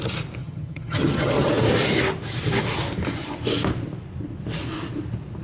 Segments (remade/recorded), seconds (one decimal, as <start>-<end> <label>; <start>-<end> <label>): 0.0-0.4 recorded; 0.4-1.5 remade; 1.5-5.4 recorded